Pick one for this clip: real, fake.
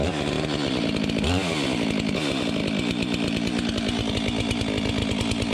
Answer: real